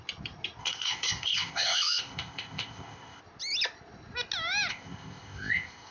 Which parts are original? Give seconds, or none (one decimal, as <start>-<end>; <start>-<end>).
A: 0.0-0.6; 3.2-4.7